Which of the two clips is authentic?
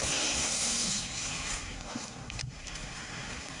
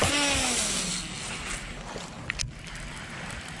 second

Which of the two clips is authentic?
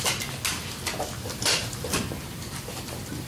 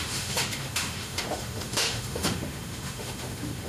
first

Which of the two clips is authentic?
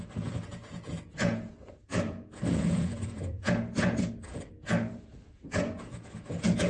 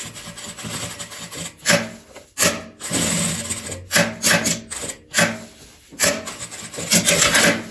second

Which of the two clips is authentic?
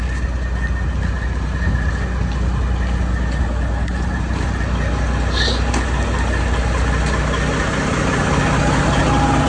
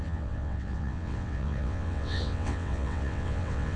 first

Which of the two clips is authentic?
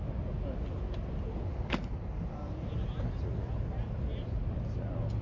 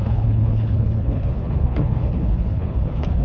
first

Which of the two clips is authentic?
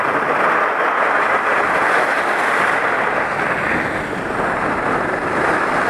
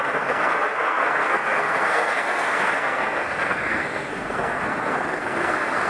first